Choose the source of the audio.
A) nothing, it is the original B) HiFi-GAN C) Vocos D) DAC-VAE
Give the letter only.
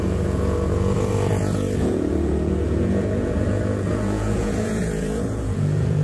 C